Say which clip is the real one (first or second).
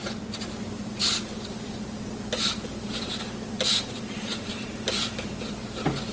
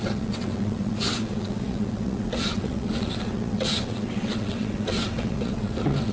first